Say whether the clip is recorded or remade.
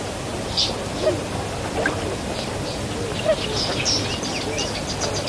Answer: recorded